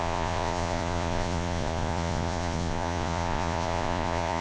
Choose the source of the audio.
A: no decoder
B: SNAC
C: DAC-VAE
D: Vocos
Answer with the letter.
D